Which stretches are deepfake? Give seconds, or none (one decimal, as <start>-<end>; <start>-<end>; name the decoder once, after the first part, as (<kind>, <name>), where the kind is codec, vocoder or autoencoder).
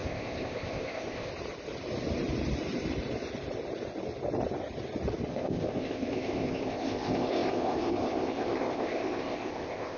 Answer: 0.0-1.3 (codec, ZipCodec); 5.3-10.0